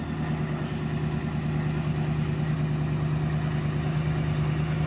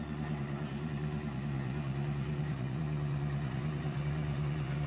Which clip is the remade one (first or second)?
second